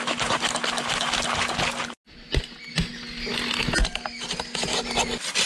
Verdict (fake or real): real